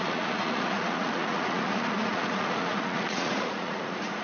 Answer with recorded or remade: remade